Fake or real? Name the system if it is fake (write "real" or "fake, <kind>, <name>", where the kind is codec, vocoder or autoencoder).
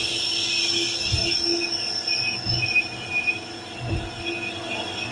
real